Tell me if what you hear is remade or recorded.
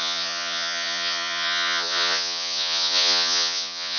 remade